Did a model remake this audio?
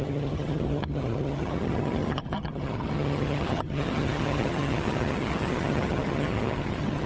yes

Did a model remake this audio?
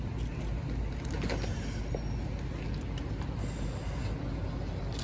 no